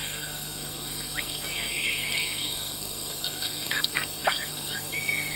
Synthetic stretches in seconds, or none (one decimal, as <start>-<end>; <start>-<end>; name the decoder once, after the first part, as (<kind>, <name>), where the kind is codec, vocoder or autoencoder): 0.0-5.4 (codec, SNAC)